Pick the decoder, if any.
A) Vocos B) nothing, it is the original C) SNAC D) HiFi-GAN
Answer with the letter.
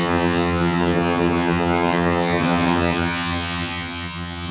D